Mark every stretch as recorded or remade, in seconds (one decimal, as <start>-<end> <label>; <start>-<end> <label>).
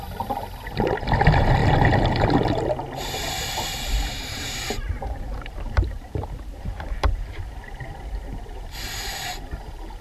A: 0.0-4.2 recorded; 4.2-7.4 remade; 7.4-10.0 recorded